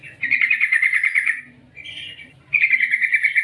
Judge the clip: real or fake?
fake